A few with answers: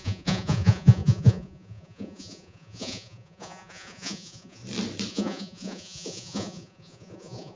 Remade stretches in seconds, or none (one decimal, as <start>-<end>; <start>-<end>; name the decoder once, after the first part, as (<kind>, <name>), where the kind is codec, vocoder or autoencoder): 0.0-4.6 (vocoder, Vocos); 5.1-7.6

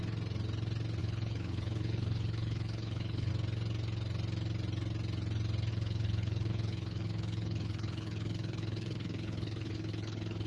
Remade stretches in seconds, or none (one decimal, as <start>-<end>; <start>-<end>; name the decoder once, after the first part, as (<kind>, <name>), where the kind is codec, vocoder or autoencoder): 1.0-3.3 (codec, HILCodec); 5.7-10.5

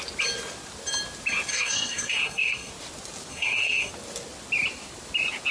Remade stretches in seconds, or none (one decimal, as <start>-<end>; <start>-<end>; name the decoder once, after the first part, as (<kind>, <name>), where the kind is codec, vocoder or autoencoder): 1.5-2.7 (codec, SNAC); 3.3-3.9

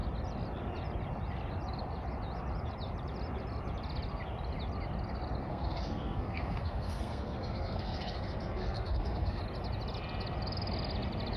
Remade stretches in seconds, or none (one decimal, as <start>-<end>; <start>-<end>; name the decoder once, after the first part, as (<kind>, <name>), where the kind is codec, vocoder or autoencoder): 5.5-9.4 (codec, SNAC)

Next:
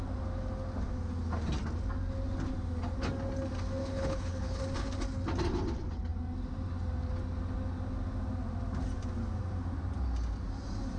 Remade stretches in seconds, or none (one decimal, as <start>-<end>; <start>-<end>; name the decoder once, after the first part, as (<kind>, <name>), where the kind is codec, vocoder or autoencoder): 3.8-4.6 (codec, HILCodec)